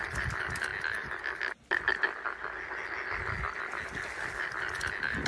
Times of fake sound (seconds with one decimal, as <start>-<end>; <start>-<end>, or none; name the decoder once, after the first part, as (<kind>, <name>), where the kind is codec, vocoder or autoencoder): none